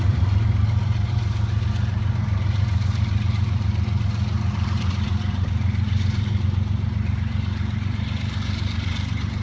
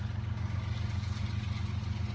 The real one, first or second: second